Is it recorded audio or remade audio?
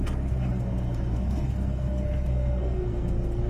remade